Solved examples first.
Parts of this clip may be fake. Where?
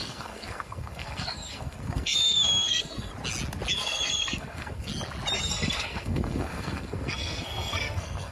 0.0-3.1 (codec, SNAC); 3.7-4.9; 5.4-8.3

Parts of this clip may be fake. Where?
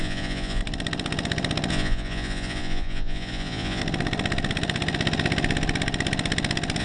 0.0-0.6 (vocoder, Vocos); 1.7-3.8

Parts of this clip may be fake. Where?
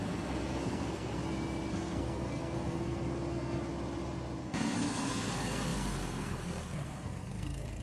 0.0-1.2 (codec, SNAC); 1.7-3.7; 4.4-7.8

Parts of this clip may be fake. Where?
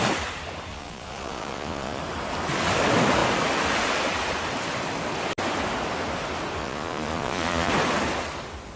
0.7-2.0 (vocoder, Vocos); 6.6-7.7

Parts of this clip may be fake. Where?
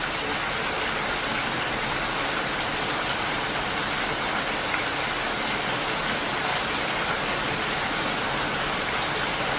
none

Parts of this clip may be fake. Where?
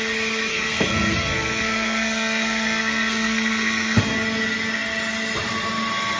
0.5-4.0 (codec, SNAC)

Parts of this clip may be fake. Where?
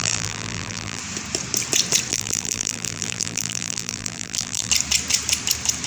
0.0-1.0 (vocoder, BigVGAN v2); 2.1-4.7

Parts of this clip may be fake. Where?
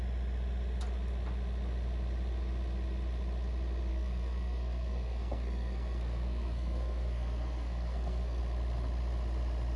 3.9-8.4 (codec, SNAC)